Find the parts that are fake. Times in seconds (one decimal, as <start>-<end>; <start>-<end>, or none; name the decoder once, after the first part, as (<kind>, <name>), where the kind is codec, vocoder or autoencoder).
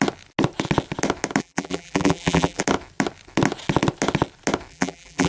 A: 1.4-2.6 (vocoder, BigVGAN v2); 4.7-5.3